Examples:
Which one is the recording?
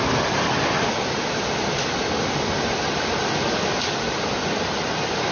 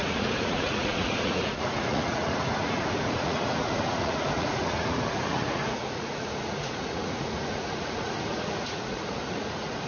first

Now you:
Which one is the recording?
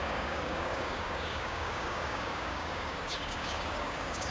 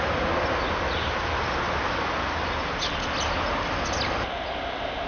second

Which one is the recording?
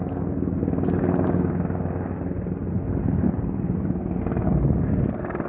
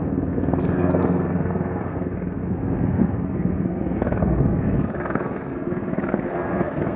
first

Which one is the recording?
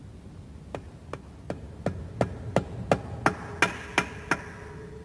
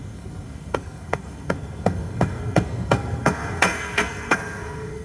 first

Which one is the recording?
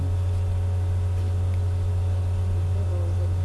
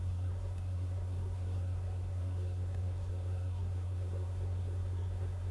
first